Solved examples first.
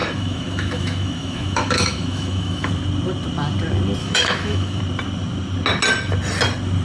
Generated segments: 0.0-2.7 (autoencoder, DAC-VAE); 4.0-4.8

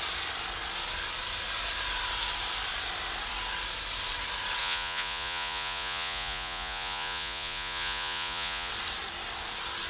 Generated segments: 4.6-8.7 (vocoder, Vocos)

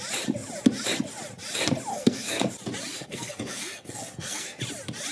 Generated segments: 1.9-2.5 (codec, SNAC); 2.9-4.6

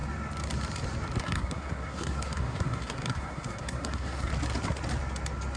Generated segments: 1.2-4.3 (codec, SNAC)

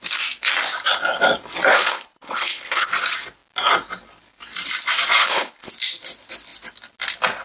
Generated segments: 1.7-2.9 (codec, HILCodec); 5.2-5.7

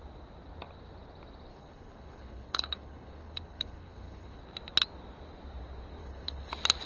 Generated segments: 1.5-4.4 (codec, HILCodec); 6.0-6.5

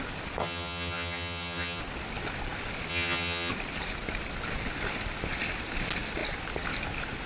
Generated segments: 0.4-1.8 (vocoder, HiFi-GAN); 2.9-3.5